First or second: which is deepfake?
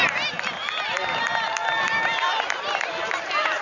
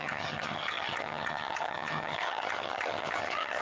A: second